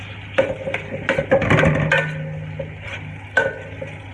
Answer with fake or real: real